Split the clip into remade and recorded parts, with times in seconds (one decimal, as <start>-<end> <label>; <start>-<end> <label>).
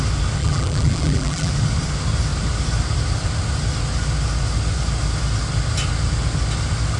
0.0-0.4 recorded; 0.4-1.5 remade; 1.5-7.0 recorded